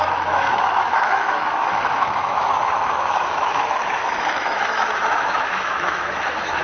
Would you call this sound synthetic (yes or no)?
yes